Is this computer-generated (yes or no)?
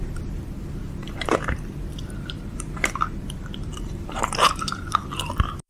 yes